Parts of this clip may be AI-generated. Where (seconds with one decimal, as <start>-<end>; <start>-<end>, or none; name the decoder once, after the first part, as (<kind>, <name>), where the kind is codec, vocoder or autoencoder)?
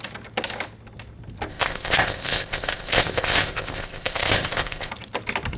1.5-4.9 (codec, ZipCodec)